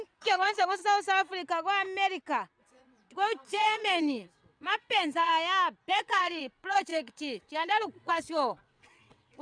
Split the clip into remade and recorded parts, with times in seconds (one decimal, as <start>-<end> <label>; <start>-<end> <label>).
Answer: 0.0-0.8 remade; 0.8-2.6 recorded; 2.6-5.3 remade; 5.3-5.9 recorded; 5.9-9.4 remade